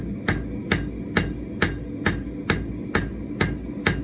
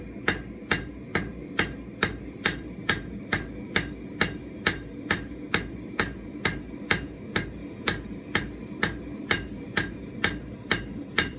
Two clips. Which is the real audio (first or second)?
first